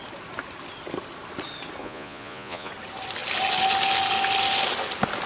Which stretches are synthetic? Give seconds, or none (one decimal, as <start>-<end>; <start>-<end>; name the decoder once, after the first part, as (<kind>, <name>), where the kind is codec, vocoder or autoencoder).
1.8-2.7 (vocoder, Vocos)

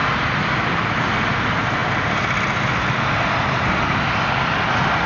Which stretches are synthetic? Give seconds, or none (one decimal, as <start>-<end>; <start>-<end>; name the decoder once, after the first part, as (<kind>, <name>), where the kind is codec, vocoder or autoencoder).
none

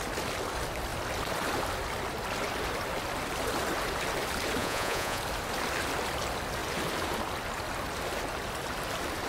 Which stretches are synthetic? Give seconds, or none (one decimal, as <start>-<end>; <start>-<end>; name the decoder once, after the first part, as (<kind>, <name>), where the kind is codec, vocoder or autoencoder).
4.6-5.2 (vocoder, Vocos)